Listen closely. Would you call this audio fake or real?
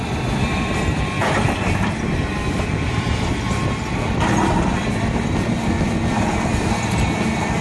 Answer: fake